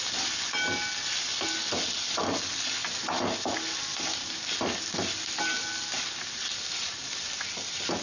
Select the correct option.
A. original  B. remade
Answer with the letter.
A